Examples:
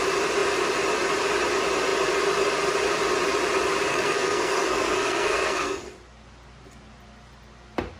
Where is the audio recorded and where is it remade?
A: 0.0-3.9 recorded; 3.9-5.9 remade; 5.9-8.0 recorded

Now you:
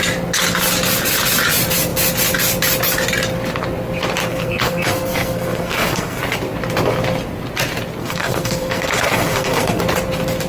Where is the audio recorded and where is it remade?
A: 0.0-4.3 recorded; 4.3-6.2 remade; 6.2-8.0 recorded; 8.0-9.8 remade; 9.8-10.5 recorded

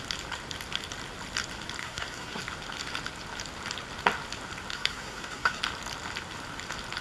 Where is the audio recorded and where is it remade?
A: 0.0-1.8 recorded; 1.8-2.4 remade; 2.4-4.7 recorded; 4.7-5.6 remade; 5.6-7.0 recorded